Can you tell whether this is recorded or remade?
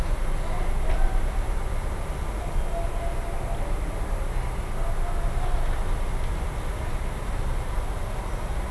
recorded